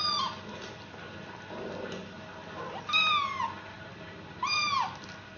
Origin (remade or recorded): recorded